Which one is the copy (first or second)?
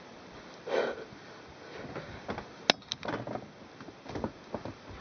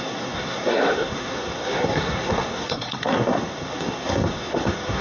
second